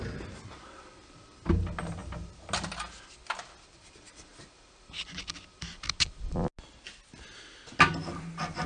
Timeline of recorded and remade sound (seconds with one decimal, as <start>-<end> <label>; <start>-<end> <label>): 0.0-8.7 recorded